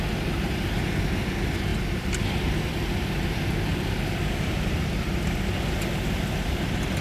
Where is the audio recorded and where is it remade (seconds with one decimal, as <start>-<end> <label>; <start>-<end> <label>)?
0.0-1.7 recorded; 1.7-2.3 remade; 2.3-3.7 recorded; 3.7-5.5 remade; 5.5-7.0 recorded